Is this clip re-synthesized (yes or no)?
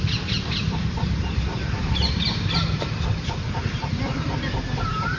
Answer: yes